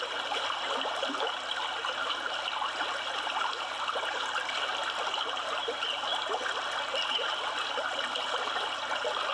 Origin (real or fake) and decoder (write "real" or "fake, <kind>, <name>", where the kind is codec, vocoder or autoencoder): real